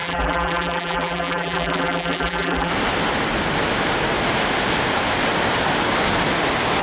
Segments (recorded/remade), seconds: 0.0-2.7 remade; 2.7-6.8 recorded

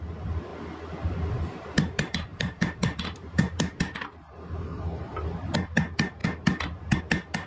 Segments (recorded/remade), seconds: 0.0-0.5 remade; 0.5-1.3 recorded; 1.3-6.2 remade; 6.2-7.0 recorded; 7.0-7.5 remade